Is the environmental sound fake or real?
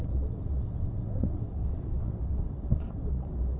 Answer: fake